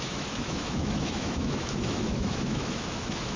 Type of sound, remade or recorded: remade